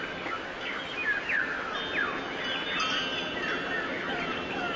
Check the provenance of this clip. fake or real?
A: real